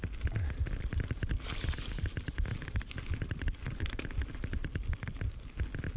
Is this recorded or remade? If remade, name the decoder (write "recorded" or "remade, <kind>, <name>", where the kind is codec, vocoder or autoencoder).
recorded